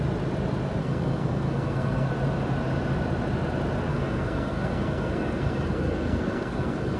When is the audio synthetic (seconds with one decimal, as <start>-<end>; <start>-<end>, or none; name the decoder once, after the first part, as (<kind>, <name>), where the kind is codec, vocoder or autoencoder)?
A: 0.8-2.1 (codec, SNAC); 3.9-7.0